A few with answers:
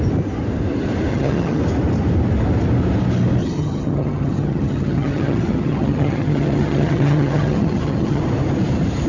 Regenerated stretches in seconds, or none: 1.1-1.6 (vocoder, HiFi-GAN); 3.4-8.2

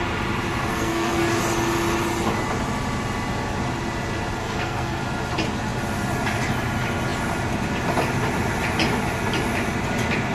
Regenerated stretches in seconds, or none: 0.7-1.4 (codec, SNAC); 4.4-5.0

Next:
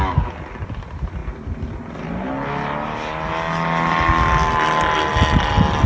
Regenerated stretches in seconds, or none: none

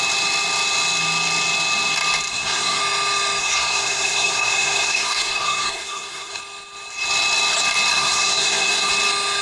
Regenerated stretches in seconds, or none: 2.3-2.8 (codec, SNAC); 3.4-6.4; 7.9-8.9

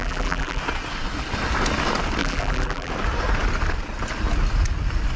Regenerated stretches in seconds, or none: 0.0-0.6 (vocoder, BigVGAN v2); 2.2-2.9

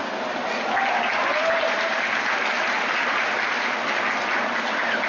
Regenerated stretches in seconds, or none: none

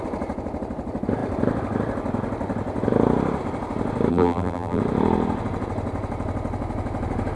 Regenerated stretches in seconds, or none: 4.1-4.8 (vocoder, BigVGAN v2)

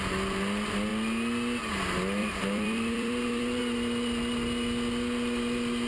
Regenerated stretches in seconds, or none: 2.2-3.6 (vocoder, BigVGAN v2)